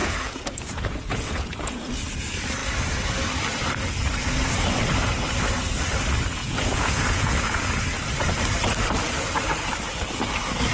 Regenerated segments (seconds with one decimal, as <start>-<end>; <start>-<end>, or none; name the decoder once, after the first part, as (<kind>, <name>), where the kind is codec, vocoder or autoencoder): 0.0-1.9 (vocoder, Vocos); 6.4-7.7